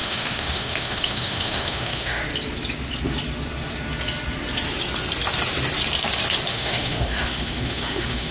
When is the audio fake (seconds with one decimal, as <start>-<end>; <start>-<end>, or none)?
0.0-2.2; 6.5-8.3